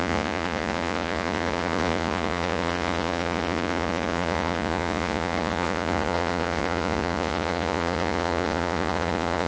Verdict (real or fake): fake